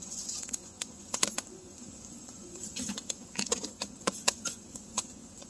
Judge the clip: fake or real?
fake